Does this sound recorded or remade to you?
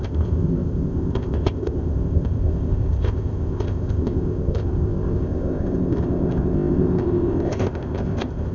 remade